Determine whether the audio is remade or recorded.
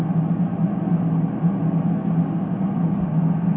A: recorded